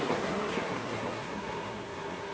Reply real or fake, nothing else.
fake